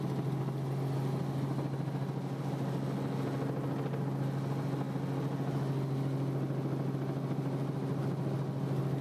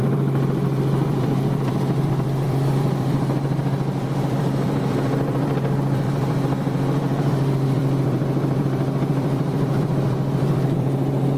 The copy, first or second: second